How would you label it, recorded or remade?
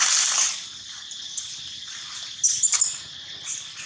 recorded